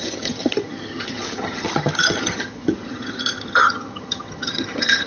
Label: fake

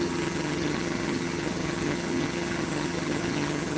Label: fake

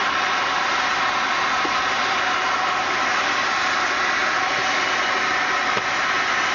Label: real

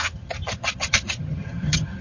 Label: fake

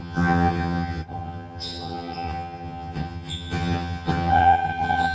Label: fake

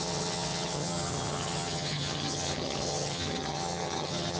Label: fake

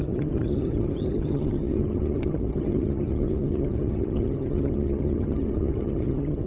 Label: fake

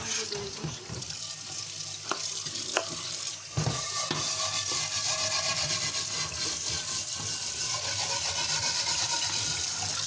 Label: real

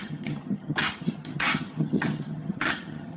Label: fake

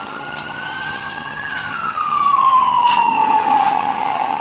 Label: fake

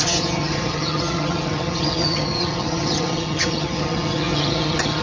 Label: fake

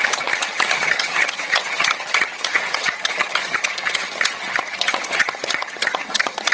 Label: fake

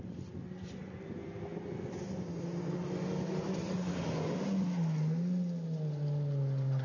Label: real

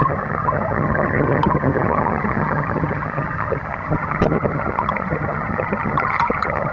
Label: fake